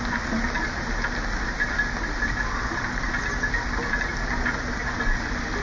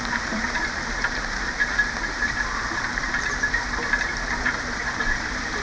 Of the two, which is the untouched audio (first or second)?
first